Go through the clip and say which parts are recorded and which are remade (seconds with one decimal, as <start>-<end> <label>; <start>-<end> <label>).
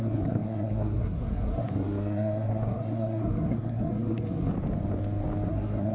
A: 0.0-4.5 remade; 4.5-5.5 recorded; 5.5-5.9 remade